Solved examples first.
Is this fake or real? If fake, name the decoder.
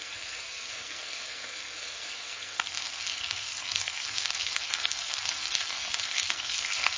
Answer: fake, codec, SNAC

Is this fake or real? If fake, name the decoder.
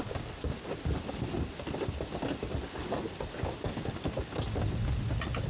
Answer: real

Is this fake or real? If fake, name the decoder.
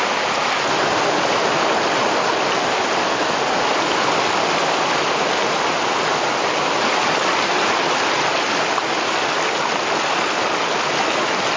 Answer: real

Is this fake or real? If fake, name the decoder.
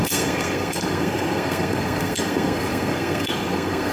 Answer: fake, codec, SNAC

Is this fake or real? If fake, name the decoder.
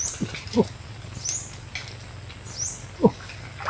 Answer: real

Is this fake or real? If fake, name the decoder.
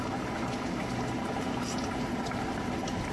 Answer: real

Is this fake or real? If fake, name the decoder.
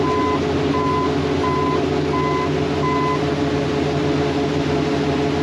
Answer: real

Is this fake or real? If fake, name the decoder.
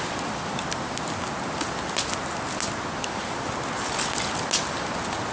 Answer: real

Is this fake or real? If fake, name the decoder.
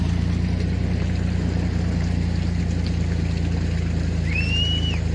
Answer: real